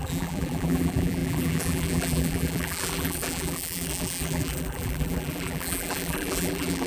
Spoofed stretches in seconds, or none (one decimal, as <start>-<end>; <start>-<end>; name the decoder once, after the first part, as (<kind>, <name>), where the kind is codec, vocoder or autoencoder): 0.0-6.9 (vocoder, BigVGAN v2)